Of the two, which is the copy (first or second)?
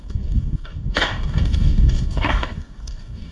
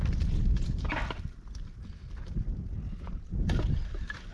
first